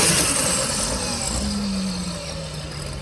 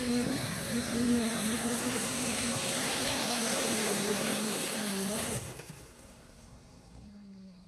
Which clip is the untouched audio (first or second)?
first